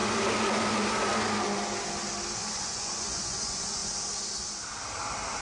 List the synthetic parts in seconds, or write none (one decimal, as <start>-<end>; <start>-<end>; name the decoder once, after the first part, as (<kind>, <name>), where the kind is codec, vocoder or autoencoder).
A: 2.4-3.8 (vocoder, Vocos)

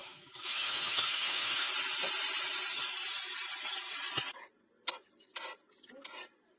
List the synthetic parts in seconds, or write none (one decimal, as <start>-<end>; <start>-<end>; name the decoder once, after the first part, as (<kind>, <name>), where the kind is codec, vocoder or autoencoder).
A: 0.0-1.7 (autoencoder, DAC-VAE)